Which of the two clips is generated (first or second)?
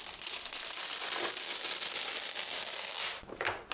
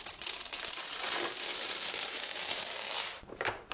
second